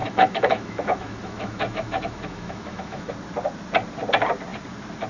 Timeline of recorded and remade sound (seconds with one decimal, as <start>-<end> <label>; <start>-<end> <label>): 0.0-3.1 remade; 3.1-5.1 recorded